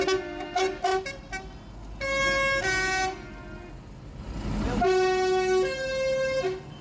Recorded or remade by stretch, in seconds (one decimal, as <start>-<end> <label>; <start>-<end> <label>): 0.0-6.8 recorded